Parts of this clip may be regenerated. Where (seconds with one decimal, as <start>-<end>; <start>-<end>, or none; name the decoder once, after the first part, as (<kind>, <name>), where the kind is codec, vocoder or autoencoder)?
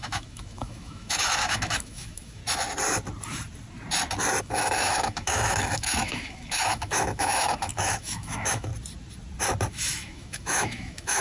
0.0-2.4 (autoencoder, DAC-VAE); 4.4-8.7; 9.7-11.2